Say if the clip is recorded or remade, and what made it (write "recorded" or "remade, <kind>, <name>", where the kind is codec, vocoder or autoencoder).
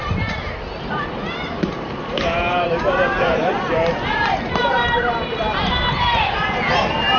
remade, vocoder, BigVGAN v2